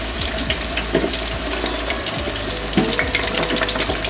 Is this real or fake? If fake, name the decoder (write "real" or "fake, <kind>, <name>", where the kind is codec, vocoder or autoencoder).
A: fake, vocoder, BigVGAN v2